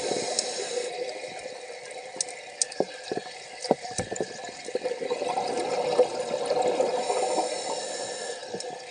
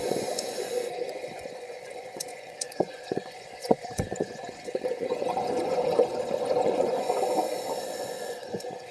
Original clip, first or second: first